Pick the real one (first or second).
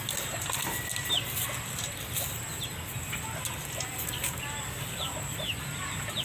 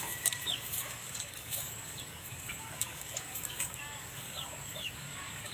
first